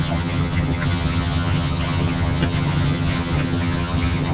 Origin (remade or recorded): remade